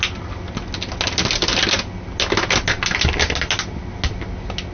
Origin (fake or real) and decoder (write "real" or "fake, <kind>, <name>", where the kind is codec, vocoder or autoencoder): real